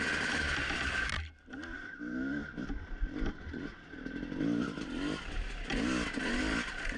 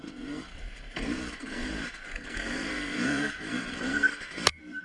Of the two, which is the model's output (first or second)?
second